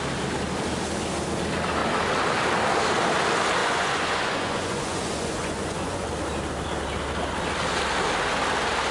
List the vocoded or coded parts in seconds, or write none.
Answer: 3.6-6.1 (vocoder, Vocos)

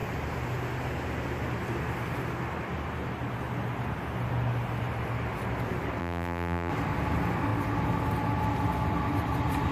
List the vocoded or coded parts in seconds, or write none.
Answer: 6.0-6.7 (vocoder, BigVGAN v2)

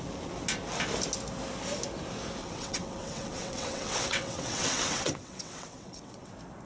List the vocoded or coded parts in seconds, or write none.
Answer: 2.4-6.3 (vocoder, WaveNeXt)

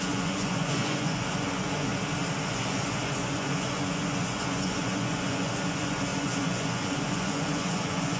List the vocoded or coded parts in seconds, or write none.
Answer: 0.0-1.9 (vocoder, Vocos); 2.5-8.2

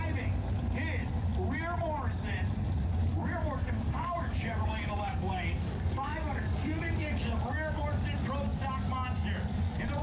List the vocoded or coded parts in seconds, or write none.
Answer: 3.0-7.8 (codec, DAC)

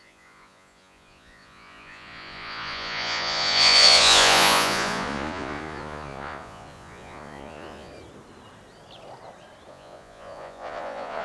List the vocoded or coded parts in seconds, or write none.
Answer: 0.0-7.9 (vocoder, Vocos); 9.7-11.2

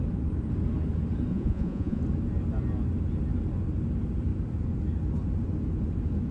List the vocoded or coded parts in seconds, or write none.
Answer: 1.3-2.0 (vocoder, Vocos)